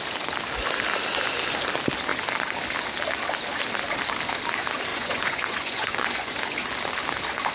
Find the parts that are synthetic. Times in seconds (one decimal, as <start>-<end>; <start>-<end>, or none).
4.9-6.4